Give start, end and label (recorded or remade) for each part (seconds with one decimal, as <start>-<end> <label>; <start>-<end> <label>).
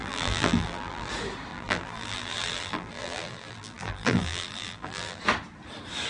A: 0.0-1.1 remade; 1.1-1.5 recorded; 1.5-5.2 remade; 5.2-6.1 recorded